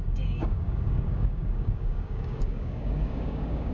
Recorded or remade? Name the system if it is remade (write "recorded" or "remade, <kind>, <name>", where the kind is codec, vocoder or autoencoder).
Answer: remade, codec, DAC